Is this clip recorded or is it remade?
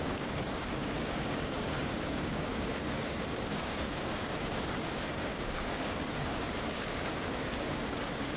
remade